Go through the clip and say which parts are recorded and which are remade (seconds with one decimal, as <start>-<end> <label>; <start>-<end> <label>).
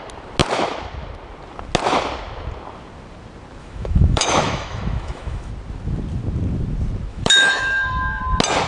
0.0-3.6 recorded; 3.6-5.5 remade; 5.5-7.1 recorded; 7.1-8.2 remade; 8.2-8.7 recorded